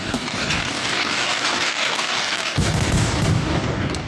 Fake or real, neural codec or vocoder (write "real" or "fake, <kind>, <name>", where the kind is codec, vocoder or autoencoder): fake, codec, DAC